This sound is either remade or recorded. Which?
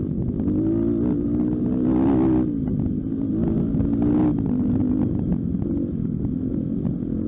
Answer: recorded